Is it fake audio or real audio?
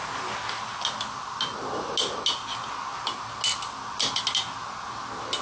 real